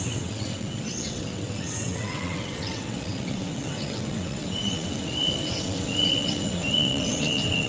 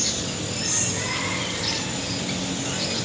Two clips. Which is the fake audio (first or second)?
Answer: first